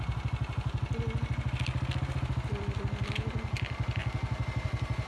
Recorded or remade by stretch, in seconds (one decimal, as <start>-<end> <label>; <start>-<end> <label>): 0.0-5.1 recorded